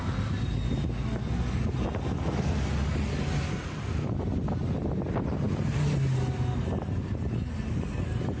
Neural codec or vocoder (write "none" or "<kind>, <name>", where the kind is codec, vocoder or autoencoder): none